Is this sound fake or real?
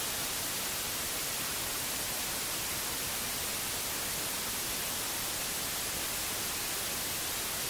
real